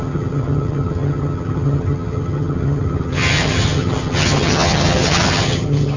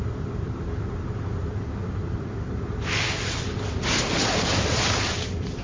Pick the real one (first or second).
second